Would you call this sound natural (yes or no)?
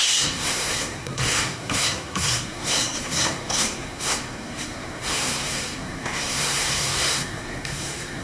no